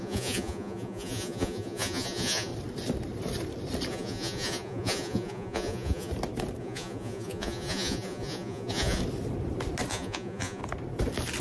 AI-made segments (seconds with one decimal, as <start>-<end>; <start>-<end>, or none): 0.0-2.5; 3.9-6.1; 6.6-9.0; 9.9-10.6